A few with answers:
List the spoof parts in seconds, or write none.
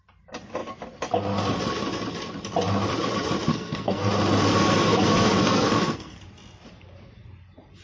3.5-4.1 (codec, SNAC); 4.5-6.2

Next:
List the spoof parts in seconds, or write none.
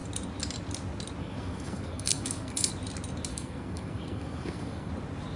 1.2-2.7 (codec, SNAC); 3.3-4.9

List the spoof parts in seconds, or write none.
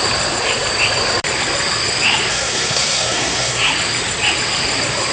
2.3-3.7 (codec, SNAC)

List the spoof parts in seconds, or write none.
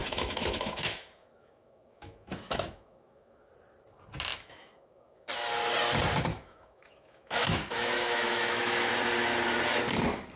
0.0-3.5 (autoencoder, DAC-VAE); 4.3-5.3; 6.3-8.9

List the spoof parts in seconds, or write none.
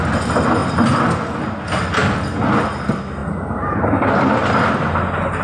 none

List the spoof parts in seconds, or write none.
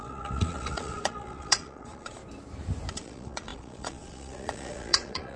0.0-2.2 (vocoder, Vocos); 2.9-5.4